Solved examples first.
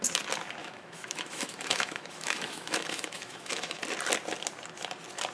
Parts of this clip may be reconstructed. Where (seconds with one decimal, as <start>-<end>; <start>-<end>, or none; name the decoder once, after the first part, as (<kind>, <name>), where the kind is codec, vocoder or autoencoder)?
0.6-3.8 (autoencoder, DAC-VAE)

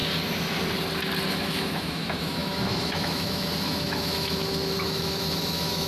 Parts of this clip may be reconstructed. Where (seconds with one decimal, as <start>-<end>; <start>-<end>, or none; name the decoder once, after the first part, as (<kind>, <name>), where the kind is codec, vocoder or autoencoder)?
1.3-5.9 (autoencoder, DAC-VAE)

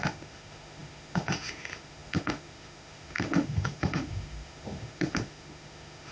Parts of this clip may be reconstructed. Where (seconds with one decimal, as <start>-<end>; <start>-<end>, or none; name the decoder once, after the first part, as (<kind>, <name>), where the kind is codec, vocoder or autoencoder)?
0.0-6.1 (autoencoder, DAC-VAE)